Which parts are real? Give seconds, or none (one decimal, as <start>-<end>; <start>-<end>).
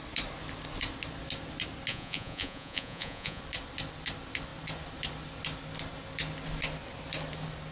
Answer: 0.0-1.9; 3.4-7.7